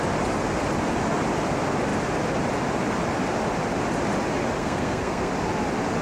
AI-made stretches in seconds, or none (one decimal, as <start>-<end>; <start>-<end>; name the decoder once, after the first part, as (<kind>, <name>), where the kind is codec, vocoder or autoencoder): 4.6-5.3 (codec, SNAC)